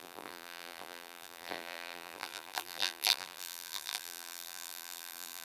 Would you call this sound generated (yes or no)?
yes